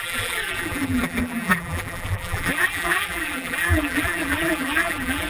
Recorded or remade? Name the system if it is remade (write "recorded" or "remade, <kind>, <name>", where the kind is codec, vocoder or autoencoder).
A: remade, vocoder, BigVGAN v2